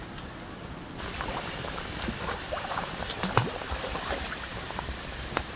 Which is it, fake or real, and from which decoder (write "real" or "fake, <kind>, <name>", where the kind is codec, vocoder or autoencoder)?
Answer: real